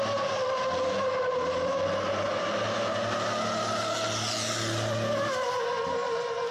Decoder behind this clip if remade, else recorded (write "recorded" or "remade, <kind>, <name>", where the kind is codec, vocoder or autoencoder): recorded